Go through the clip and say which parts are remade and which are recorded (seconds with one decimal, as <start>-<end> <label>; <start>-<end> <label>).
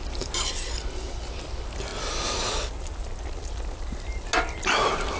0.0-5.2 recorded